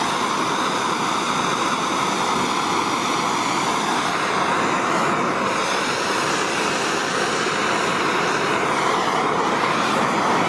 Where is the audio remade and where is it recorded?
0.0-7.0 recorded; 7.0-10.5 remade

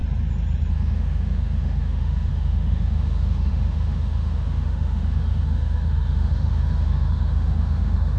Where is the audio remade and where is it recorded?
0.0-0.7 recorded; 0.7-8.2 remade

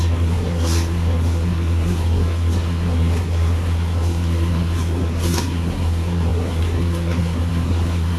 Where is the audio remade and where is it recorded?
0.0-8.2 remade

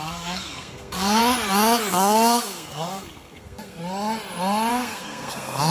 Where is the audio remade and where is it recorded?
0.0-1.2 remade; 1.2-1.9 recorded; 1.9-3.8 remade; 3.8-4.7 recorded; 4.7-5.7 remade

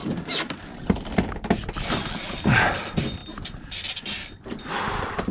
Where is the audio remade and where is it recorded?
0.0-5.3 recorded

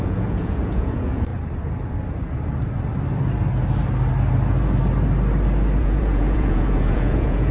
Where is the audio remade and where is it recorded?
0.0-1.3 remade; 1.3-5.8 recorded; 5.8-7.5 remade

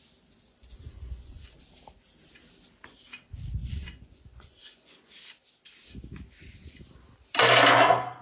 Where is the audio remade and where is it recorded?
0.0-0.6 recorded; 0.6-1.6 remade; 1.6-3.6 recorded; 3.6-5.1 remade; 5.1-8.2 recorded